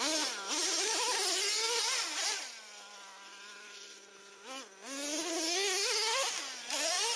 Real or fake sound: real